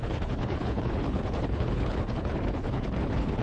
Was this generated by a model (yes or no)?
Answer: yes